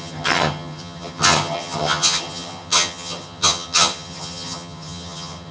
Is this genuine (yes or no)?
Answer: no